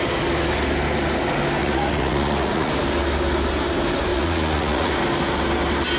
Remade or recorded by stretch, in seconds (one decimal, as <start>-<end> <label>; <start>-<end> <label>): 0.0-1.6 recorded; 1.6-2.7 remade; 2.7-4.1 recorded; 4.1-4.9 remade; 4.9-6.0 recorded